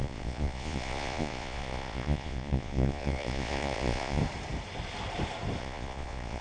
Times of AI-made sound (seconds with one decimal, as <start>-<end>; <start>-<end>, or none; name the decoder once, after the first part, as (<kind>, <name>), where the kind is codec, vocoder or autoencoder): 0.0-4.2 (vocoder, Vocos); 5.6-6.4